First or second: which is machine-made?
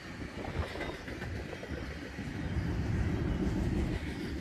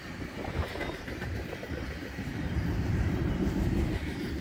second